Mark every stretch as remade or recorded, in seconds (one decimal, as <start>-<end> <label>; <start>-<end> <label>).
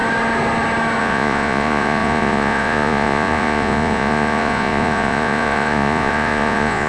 0.0-1.0 recorded; 1.0-6.9 remade